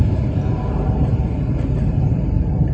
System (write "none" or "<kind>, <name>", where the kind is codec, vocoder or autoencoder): none